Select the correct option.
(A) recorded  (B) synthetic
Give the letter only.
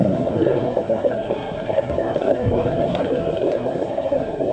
B